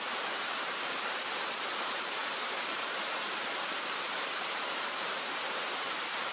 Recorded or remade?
remade